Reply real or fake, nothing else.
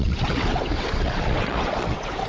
fake